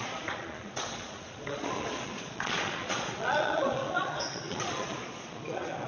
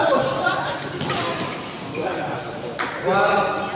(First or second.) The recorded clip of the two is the second